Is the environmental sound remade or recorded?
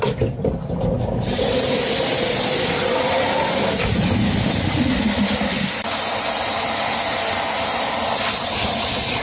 recorded